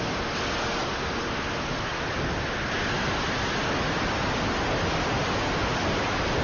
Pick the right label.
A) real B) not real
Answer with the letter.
A